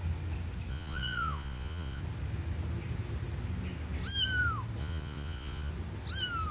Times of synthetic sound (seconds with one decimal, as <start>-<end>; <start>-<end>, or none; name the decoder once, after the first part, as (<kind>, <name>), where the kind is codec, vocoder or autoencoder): 0.7-2.0 (vocoder, Vocos); 4.8-5.7